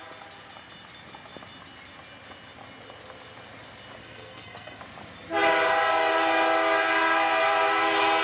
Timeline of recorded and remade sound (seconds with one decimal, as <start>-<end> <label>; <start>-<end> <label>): 0.0-4.0 recorded; 4.0-4.8 remade; 4.8-8.2 recorded